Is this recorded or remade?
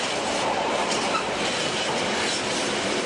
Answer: recorded